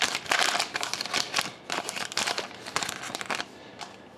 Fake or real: real